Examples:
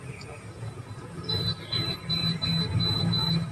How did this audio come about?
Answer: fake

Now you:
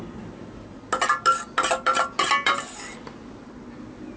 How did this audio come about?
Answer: real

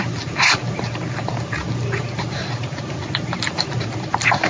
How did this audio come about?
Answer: real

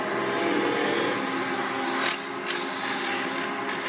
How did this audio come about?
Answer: real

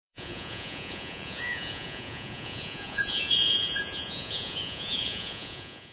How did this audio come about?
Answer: fake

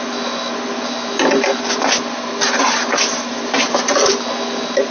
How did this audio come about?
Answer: real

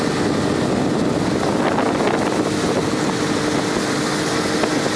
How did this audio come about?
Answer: real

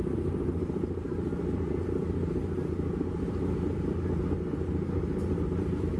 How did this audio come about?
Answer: real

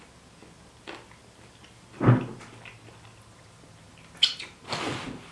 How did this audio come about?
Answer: real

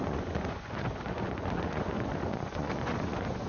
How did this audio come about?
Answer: fake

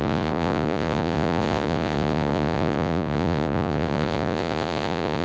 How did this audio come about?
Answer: fake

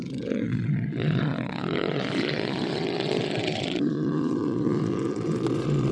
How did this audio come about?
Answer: fake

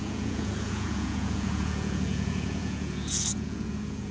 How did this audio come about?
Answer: fake